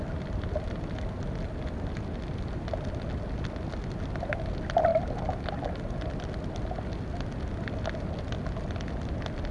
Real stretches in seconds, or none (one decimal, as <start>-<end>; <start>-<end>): 0.0-9.5